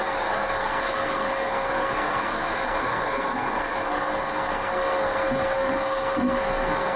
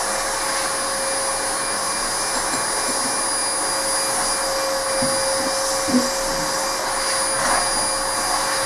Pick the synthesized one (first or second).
first